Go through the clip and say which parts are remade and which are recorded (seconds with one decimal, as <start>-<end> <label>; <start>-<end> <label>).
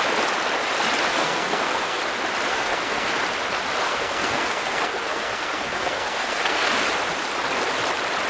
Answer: 0.0-1.1 recorded; 1.1-2.0 remade; 2.0-2.5 recorded; 2.5-3.1 remade; 3.1-3.8 recorded; 3.8-6.7 remade; 6.7-8.3 recorded